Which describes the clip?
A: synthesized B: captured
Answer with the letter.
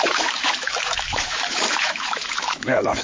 A